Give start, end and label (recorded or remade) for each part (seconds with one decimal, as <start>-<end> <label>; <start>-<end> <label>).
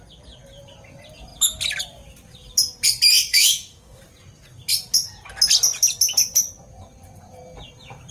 0.0-3.3 recorded; 3.3-4.0 remade; 4.0-8.1 recorded